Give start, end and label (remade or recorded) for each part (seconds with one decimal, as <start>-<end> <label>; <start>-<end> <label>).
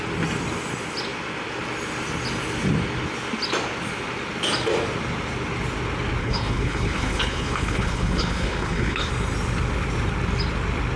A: 0.0-6.2 recorded; 6.2-9.1 remade; 9.1-11.0 recorded